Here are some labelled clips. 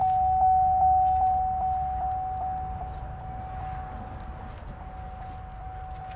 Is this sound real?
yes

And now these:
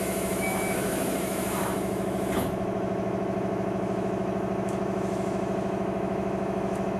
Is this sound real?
no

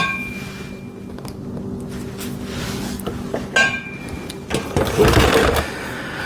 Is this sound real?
yes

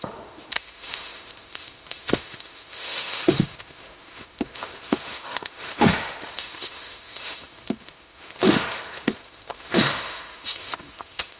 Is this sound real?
no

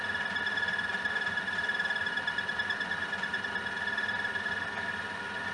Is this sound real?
yes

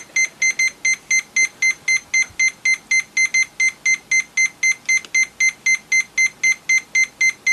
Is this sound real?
yes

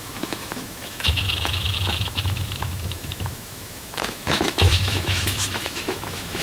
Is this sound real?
no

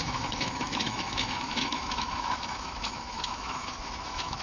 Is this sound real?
no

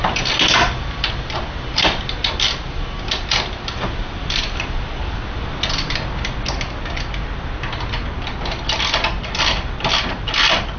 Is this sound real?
yes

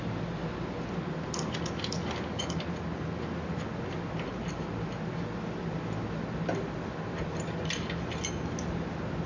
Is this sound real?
yes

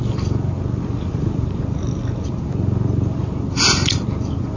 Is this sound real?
yes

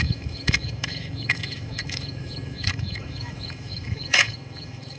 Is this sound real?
no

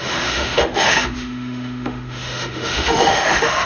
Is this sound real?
no